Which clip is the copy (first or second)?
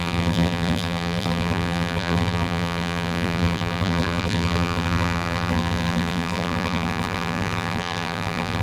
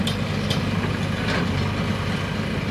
first